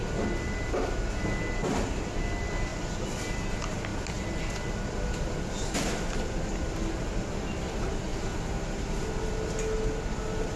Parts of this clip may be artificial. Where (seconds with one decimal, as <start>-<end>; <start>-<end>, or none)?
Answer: none